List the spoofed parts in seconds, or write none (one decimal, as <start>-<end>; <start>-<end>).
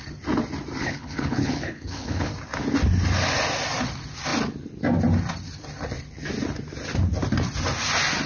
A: 0.8-2.3